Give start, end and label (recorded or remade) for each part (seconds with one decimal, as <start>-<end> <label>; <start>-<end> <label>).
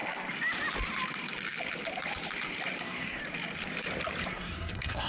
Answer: 0.0-2.8 recorded; 2.8-3.2 remade; 3.2-4.3 recorded; 4.3-5.1 remade